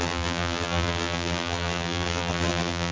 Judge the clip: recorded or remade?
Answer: remade